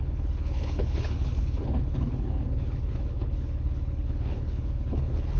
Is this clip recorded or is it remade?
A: remade